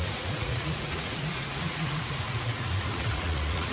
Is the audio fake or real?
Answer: fake